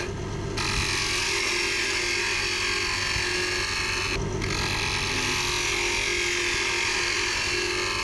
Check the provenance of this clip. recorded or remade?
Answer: recorded